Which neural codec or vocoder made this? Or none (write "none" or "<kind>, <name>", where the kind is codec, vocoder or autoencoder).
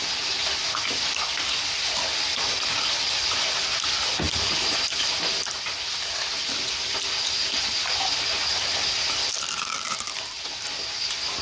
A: none